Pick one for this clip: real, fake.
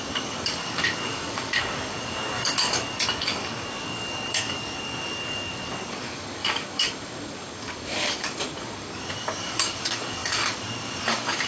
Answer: fake